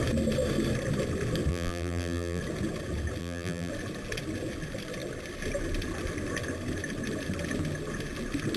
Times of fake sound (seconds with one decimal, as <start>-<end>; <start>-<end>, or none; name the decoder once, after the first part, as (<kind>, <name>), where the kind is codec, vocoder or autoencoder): 1.5-2.4 (vocoder, BigVGAN v2); 3.2-3.7